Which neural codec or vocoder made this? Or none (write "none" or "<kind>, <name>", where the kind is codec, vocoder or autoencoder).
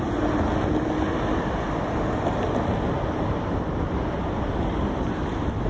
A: none